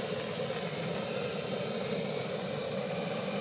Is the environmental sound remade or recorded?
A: recorded